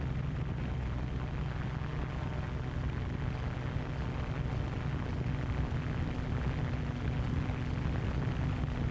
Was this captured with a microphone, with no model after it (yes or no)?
yes